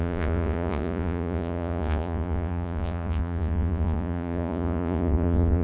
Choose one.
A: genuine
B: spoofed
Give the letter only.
B